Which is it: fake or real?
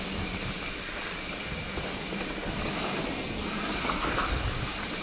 real